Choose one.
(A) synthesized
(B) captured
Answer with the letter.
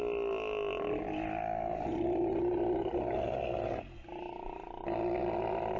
B